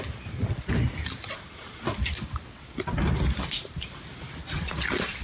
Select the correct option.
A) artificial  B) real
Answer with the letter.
B